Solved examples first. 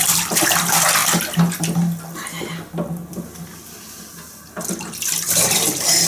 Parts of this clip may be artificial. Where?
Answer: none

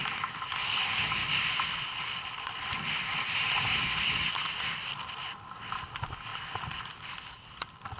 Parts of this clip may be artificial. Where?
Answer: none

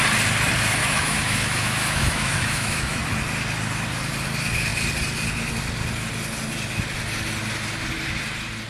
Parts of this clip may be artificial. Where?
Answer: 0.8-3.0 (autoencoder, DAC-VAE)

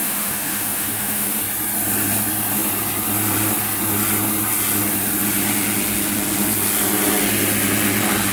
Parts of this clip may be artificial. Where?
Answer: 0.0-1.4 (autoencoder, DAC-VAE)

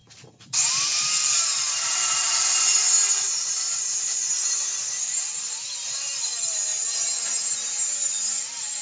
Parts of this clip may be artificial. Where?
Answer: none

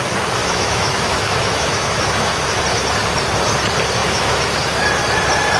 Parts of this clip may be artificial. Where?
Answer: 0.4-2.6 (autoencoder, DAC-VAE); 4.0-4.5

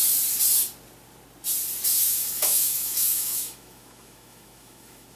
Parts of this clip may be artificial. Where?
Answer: 1.9-5.2 (autoencoder, DAC-VAE)